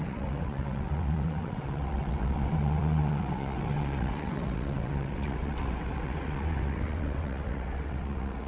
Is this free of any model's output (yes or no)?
no